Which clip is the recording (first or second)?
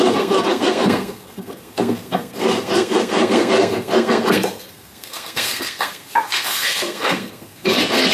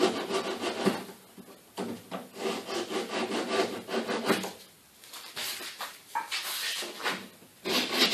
second